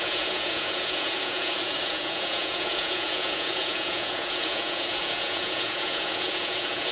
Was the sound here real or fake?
fake